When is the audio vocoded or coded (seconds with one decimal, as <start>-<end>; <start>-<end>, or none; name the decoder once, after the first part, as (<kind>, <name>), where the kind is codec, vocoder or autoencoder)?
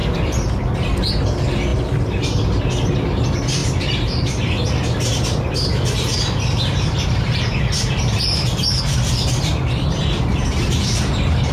3.6-8.8 (vocoder, BigVGAN v2); 10.4-11.1